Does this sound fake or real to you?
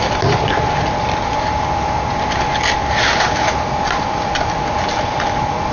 real